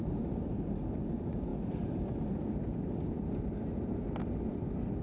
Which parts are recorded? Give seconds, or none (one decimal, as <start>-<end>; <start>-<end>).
0.0-5.0